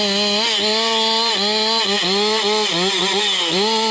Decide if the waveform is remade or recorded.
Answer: recorded